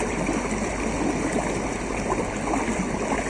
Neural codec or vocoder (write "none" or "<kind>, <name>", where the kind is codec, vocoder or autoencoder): none